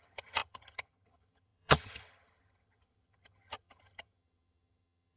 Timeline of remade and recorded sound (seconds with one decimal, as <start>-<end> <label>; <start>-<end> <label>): 0.0-5.2 remade